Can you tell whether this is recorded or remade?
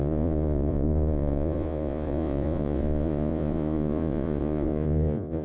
remade